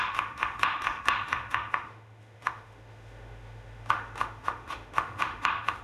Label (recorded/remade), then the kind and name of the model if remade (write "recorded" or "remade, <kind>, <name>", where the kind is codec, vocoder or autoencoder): remade, autoencoder, DAC-VAE